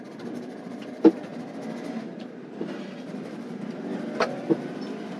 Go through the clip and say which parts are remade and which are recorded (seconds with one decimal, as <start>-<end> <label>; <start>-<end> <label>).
0.0-5.2 recorded